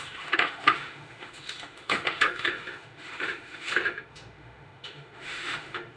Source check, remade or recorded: remade